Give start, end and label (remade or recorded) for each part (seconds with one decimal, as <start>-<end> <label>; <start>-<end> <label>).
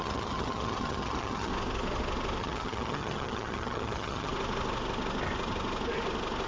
0.0-1.5 remade; 1.5-2.4 recorded; 2.4-4.3 remade; 4.3-6.5 recorded